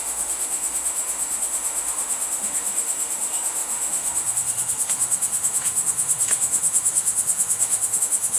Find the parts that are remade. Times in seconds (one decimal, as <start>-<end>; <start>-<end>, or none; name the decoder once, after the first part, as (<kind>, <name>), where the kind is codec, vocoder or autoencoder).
0.0-8.4 (autoencoder, DAC-VAE)